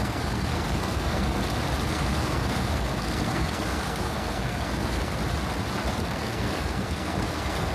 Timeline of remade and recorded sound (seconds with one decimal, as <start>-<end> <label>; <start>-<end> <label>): 0.0-1.4 remade; 1.4-1.9 recorded; 1.9-5.2 remade; 5.2-5.9 recorded; 5.9-7.7 remade